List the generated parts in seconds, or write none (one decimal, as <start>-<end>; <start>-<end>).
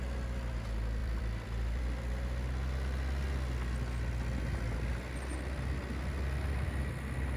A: 1.0-1.8